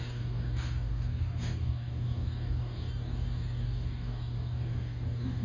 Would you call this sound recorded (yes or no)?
no